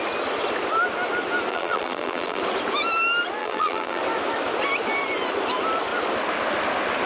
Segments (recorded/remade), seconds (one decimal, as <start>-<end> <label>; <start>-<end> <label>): 0.0-1.5 recorded; 1.5-2.4 remade; 2.4-3.4 recorded; 3.4-4.0 remade; 4.0-7.1 recorded